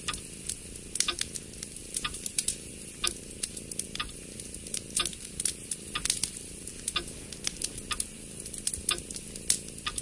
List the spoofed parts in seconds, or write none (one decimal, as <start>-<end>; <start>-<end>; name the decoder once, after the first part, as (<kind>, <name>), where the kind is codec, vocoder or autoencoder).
1.8-2.7 (vocoder, BigVGAN v2); 5.1-5.7